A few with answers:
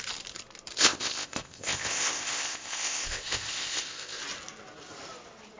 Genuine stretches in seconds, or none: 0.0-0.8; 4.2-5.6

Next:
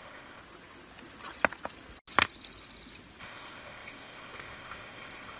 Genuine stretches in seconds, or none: 0.4-3.2

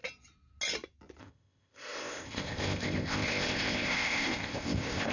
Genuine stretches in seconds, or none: 0.0-1.2